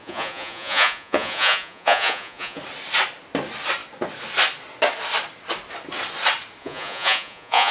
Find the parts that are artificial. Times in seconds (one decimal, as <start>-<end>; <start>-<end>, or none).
0.0-2.6; 6.6-7.7